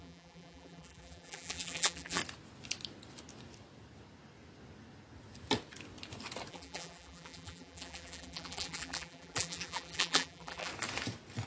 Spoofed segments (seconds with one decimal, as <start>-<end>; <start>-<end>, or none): 0.0-2.2; 6.5-10.7